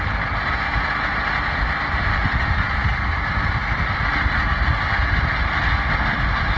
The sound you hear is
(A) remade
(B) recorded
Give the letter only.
B